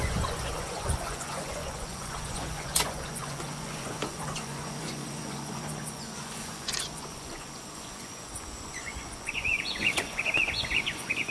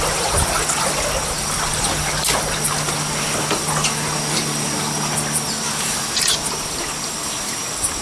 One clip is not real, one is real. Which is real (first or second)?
second